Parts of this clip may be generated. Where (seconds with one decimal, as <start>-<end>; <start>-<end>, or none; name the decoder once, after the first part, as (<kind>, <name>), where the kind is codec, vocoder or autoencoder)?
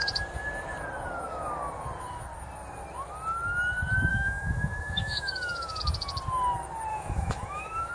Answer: 4.1-5.8 (autoencoder, DAC-VAE); 6.9-7.9